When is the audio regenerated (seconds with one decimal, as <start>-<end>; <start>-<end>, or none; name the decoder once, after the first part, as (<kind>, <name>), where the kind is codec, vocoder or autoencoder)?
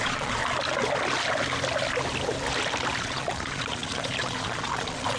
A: 0.0-0.4 (vocoder, Vocos); 3.0-5.2